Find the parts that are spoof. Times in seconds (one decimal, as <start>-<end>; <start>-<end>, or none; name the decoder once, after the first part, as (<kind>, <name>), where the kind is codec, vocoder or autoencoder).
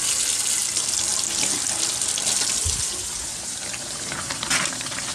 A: none